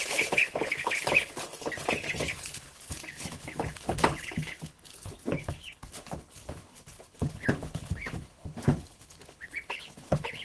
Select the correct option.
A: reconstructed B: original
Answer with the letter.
A